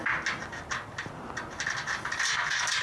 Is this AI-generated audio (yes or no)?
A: no